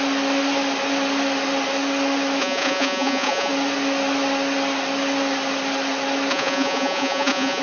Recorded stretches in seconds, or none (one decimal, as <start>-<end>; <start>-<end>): 0.0-2.4; 3.5-6.3